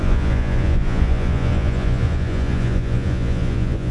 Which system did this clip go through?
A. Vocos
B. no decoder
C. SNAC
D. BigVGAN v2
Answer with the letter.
A